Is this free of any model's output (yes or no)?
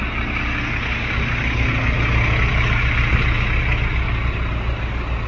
yes